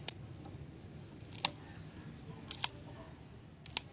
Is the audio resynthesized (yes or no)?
no